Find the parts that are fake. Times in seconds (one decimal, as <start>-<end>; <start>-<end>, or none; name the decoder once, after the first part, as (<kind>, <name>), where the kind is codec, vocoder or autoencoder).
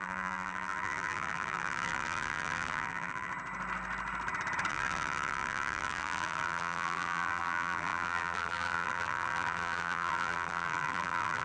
0.0-3.3 (vocoder, BigVGAN v2); 4.7-11.4